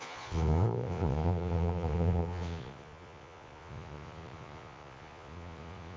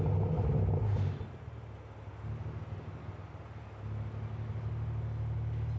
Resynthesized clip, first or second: first